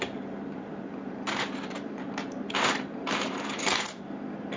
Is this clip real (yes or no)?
no